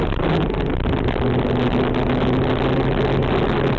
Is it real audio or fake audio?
real